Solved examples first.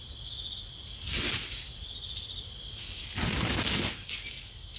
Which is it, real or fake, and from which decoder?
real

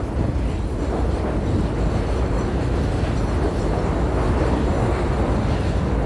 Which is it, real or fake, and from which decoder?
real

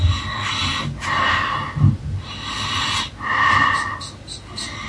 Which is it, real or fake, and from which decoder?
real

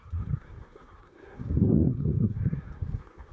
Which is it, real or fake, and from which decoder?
fake, codec, SNAC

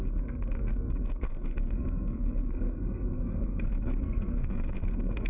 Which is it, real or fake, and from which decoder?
fake, codec, SNAC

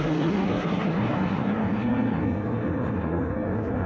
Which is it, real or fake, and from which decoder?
fake, codec, SNAC